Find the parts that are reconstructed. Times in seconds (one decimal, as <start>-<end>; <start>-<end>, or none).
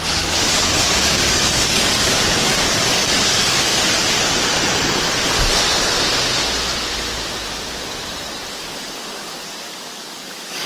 0.0-3.7; 8.5-10.7